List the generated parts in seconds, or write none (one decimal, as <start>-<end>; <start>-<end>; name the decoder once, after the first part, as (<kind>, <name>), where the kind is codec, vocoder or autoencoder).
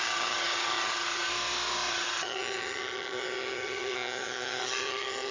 0.0-1.3 (vocoder, HiFi-GAN); 1.9-5.3